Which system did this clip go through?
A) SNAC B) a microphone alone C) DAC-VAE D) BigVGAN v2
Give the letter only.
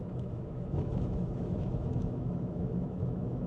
C